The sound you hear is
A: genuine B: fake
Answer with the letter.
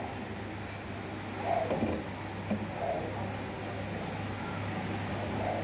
A